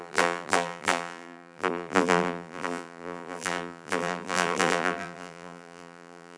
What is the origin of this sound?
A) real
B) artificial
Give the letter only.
B